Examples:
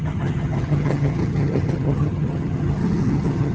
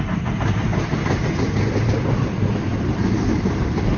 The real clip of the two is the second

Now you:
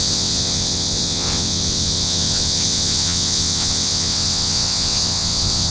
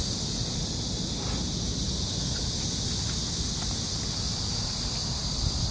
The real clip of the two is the second